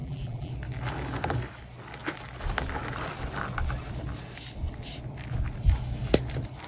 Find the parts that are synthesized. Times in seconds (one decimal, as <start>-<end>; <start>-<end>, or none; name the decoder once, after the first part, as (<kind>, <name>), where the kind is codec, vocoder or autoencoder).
0.0-0.5 (vocoder, BigVGAN v2)